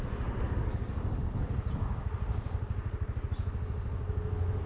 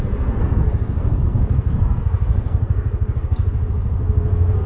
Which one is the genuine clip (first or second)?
first